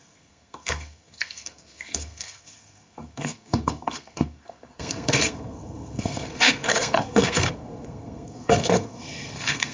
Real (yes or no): no